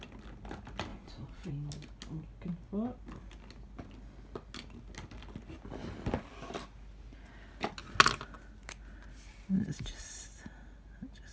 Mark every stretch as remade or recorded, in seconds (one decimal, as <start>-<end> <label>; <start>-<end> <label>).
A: 0.0-0.9 recorded; 0.9-1.5 remade; 1.5-11.3 recorded